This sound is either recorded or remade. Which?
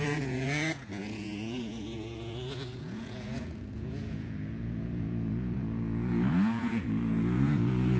remade